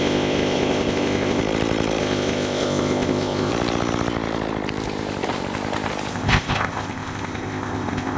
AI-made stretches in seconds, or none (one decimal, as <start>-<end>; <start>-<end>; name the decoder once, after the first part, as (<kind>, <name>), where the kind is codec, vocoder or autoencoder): 0.0-1.4 (codec, ZipCodec); 2.0-3.5; 6.1-8.2